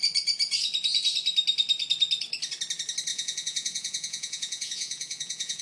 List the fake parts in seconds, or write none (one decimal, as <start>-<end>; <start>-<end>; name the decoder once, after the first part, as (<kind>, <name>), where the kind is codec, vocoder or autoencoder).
3.1-5.6 (vocoder, Vocos)